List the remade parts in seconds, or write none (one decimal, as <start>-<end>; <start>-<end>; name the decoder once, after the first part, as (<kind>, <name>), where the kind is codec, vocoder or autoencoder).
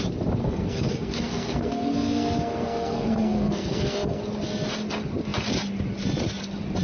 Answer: 0.4-4.2 (codec, SNAC)